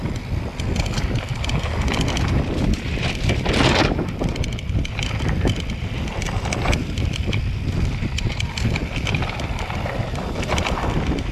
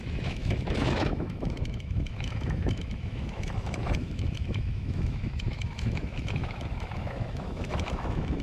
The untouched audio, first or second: first